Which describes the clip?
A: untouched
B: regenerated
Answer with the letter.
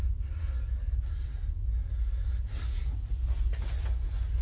A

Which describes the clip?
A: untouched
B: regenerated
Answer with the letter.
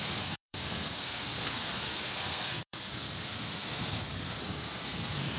B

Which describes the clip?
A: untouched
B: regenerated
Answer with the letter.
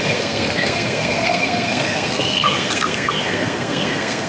B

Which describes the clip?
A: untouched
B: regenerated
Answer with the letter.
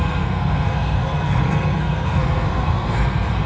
B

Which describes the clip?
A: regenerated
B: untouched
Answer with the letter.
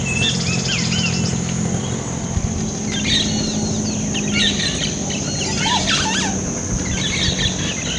B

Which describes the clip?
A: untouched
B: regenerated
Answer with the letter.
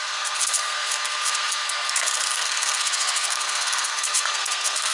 B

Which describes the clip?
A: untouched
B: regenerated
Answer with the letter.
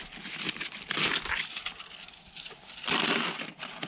A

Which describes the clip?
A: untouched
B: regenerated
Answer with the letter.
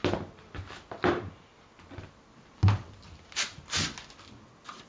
A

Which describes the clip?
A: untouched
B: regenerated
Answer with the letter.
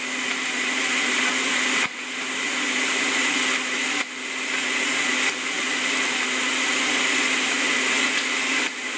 A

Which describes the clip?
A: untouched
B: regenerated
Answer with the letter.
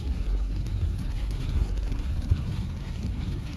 B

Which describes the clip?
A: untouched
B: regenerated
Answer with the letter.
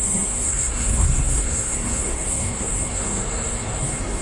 B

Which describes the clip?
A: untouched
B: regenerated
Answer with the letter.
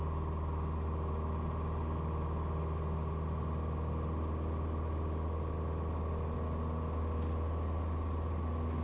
A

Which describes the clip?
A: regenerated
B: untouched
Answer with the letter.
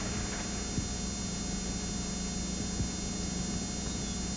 B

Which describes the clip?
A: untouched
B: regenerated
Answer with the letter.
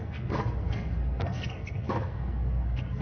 B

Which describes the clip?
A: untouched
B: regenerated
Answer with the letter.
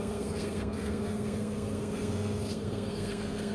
B